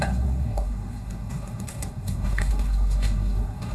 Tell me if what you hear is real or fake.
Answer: fake